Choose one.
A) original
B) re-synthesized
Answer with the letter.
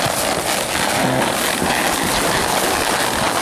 A